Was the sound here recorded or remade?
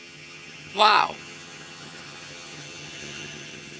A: remade